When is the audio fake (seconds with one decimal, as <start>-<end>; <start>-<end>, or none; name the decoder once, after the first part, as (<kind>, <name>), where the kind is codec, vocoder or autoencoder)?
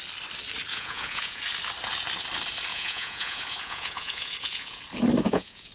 0.7-1.4 (vocoder, Vocos); 2.7-4.8; 5.2-5.7